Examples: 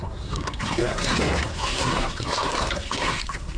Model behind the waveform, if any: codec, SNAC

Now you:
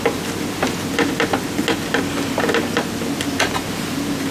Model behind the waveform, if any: none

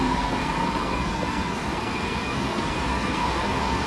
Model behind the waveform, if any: codec, SNAC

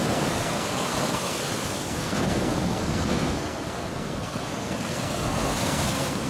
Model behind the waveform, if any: codec, SNAC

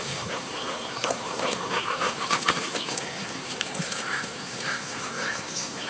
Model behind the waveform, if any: codec, SNAC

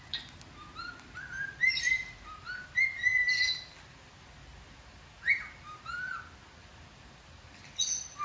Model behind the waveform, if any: none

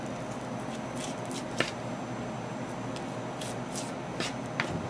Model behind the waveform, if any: none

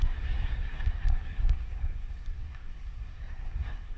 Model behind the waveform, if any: codec, SNAC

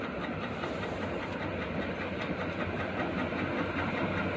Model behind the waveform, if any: none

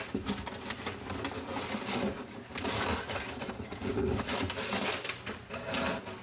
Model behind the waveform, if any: none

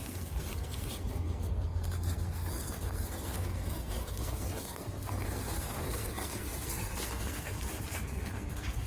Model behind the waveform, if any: codec, SNAC